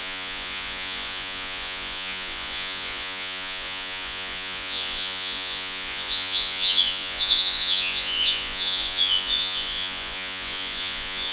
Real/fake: fake